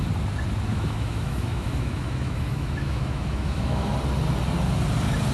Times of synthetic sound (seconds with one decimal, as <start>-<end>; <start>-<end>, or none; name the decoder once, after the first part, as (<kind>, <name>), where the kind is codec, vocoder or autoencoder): 0.7-3.9 (autoencoder, DAC-VAE)